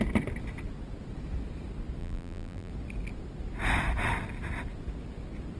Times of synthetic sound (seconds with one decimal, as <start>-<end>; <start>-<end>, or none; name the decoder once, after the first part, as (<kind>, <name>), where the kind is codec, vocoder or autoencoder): 2.0-2.7 (vocoder, BigVGAN v2)